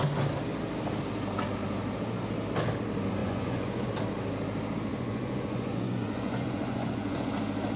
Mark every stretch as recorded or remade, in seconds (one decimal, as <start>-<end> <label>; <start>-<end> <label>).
0.0-3.2 recorded; 3.2-3.9 remade; 3.9-4.9 recorded; 4.9-7.3 remade; 7.3-7.8 recorded